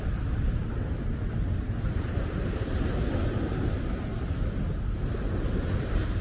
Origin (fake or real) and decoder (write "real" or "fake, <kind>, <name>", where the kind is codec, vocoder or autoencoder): real